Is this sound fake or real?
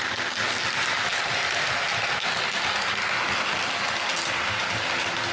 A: real